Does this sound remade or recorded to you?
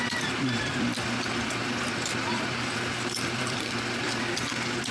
remade